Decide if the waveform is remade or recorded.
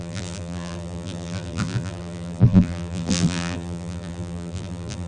remade